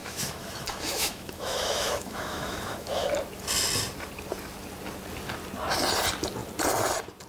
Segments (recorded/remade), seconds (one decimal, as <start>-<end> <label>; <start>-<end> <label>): 0.0-3.1 remade; 3.1-7.3 recorded